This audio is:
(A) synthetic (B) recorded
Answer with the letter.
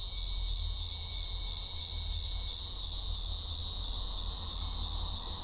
B